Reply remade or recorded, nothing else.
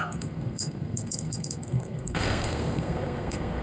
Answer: remade